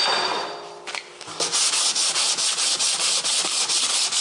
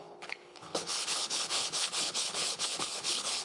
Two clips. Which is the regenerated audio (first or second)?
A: second